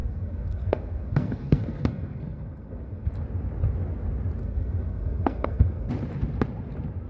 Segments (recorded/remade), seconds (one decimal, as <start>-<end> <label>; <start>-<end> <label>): 0.0-3.1 remade; 3.1-4.4 recorded; 4.4-5.9 remade; 5.9-7.1 recorded